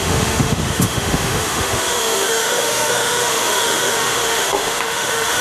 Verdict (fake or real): fake